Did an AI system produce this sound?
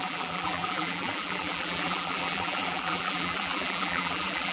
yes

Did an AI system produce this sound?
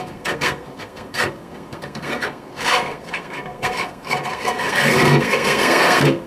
yes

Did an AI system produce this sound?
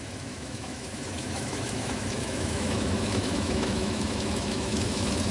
yes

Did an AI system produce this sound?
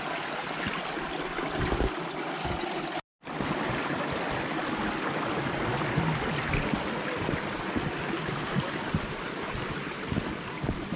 no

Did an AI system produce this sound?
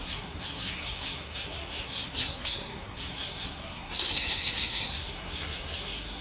yes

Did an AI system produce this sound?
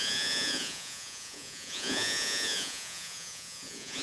yes